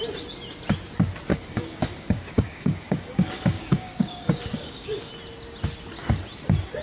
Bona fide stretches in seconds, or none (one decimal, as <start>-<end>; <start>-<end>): 0.0-1.3; 5.1-6.8